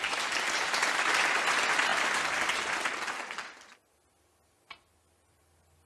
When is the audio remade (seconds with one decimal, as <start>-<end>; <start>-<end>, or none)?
none